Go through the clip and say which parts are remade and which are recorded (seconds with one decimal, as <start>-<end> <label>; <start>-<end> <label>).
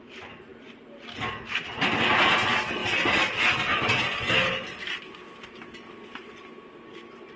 0.0-7.4 recorded